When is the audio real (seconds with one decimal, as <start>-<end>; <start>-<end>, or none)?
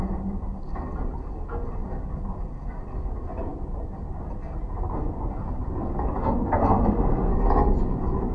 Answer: 0.0-6.6; 7.3-8.3